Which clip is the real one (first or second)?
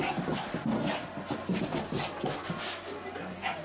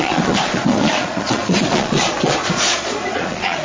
first